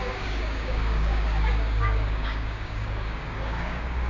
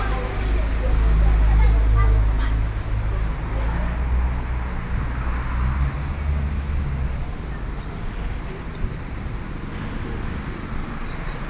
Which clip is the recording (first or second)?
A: second